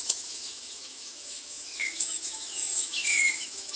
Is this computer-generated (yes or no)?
yes